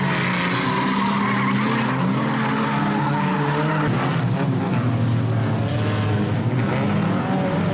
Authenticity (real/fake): real